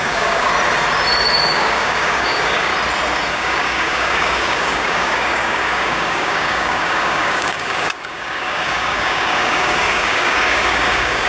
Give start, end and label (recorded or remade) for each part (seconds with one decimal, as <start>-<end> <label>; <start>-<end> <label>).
0.0-0.5 remade; 0.5-1.4 recorded; 1.4-2.7 remade; 2.7-3.3 recorded; 3.3-11.3 remade